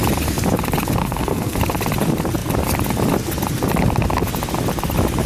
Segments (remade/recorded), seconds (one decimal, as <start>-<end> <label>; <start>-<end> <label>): 0.0-1.0 recorded; 1.0-1.6 remade; 1.6-5.3 recorded